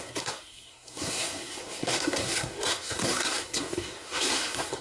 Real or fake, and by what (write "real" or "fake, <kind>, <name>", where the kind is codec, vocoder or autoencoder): fake, codec, SNAC